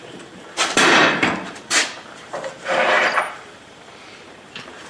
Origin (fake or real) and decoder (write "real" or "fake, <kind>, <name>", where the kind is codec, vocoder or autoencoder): fake, vocoder, BigVGAN v2